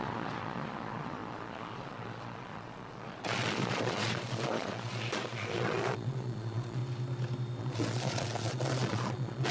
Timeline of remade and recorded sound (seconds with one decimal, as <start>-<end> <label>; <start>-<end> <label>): 0.0-6.8 remade; 6.8-7.6 recorded; 7.6-9.5 remade